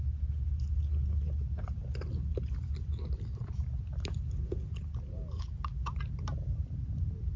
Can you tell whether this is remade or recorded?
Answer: recorded